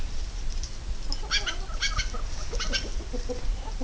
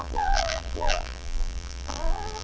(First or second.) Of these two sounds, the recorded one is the first